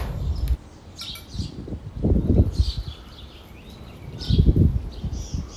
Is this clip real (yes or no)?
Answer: yes